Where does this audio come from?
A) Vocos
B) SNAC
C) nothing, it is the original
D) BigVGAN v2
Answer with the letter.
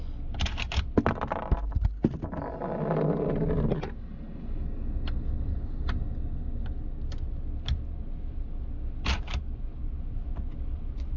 C